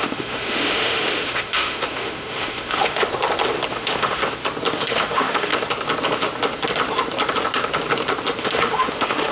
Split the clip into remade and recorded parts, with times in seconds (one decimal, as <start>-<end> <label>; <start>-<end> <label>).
0.0-3.1 remade; 3.1-3.7 recorded; 3.7-4.2 remade; 4.2-4.7 recorded; 4.7-5.5 remade; 5.5-8.4 recorded; 8.4-9.3 remade